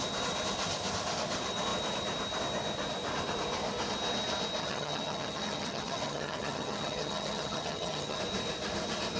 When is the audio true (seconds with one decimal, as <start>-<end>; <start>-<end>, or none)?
0.0-4.6; 8.2-9.2

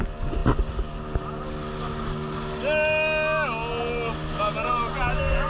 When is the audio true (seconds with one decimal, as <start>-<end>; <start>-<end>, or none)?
0.0-5.5

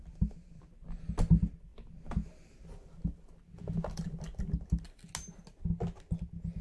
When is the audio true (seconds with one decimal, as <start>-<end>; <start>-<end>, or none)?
0.0-6.6

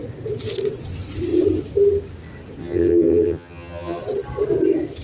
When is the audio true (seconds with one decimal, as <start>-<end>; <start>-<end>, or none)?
0.0-2.6; 4.0-5.0

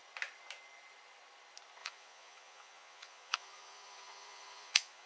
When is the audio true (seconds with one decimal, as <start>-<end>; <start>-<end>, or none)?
0.0-1.8

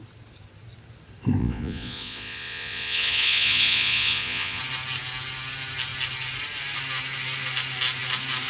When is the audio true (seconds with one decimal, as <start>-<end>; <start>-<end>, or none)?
0.0-1.4; 4.6-8.5

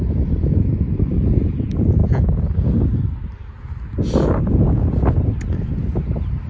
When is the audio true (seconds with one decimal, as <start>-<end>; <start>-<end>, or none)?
0.0-6.5

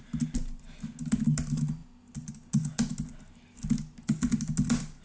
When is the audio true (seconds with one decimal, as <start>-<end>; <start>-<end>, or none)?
0.0-5.0